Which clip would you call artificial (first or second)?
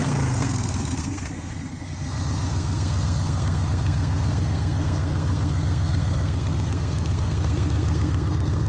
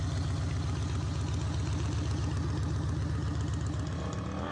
first